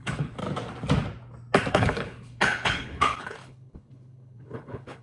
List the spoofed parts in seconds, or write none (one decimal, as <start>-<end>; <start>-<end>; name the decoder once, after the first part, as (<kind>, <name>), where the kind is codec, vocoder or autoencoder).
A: 0.0-0.4 (codec, HILCodec); 1.7-5.0